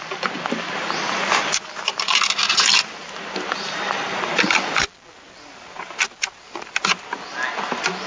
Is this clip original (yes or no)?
yes